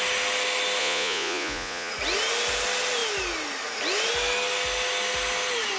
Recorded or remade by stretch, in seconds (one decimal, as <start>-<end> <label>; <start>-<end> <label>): 0.0-0.8 recorded; 0.8-1.9 remade; 1.9-5.8 recorded